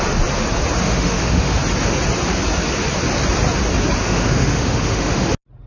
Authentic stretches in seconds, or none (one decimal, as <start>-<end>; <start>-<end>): 0.0-0.8; 1.6-4.0; 5.3-5.7